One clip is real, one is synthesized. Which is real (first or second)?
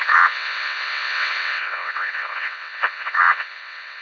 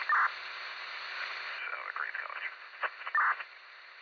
second